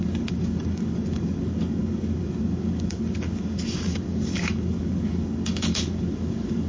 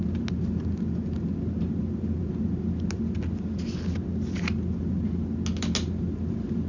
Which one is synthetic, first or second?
first